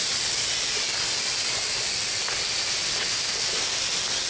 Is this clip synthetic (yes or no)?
no